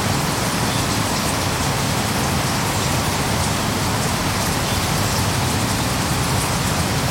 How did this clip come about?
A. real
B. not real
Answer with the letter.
A